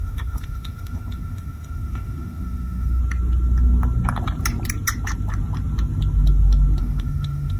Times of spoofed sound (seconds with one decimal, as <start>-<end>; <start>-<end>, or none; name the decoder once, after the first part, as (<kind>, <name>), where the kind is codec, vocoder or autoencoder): 0.0-3.0 (autoencoder, DAC-VAE); 6.8-7.6